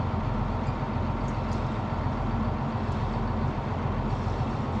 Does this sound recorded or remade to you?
recorded